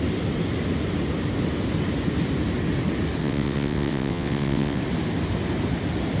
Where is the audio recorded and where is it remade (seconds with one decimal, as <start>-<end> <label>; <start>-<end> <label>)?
0.0-3.2 recorded; 3.2-4.8 remade; 4.8-6.2 recorded